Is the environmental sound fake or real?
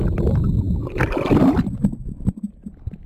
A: real